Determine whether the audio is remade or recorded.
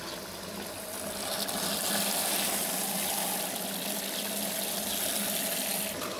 recorded